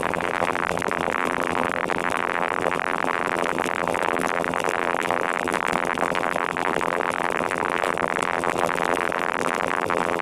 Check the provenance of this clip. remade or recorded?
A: remade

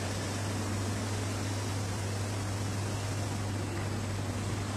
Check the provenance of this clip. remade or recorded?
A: recorded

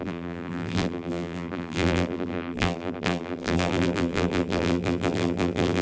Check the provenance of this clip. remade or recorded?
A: remade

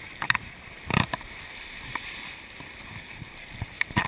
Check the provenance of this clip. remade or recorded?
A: remade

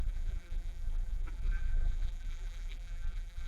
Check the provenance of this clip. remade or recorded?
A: remade